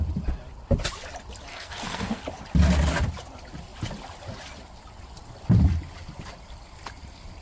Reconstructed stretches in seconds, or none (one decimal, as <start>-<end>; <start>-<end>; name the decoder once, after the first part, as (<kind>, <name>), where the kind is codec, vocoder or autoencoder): 1.5-2.2 (codec, SNAC)